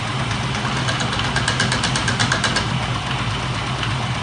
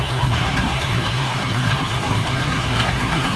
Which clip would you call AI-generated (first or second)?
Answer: second